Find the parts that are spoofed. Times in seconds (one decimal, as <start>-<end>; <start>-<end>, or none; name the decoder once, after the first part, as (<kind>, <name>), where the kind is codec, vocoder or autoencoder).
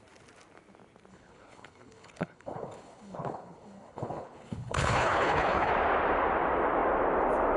1.1-5.7 (codec, HILCodec)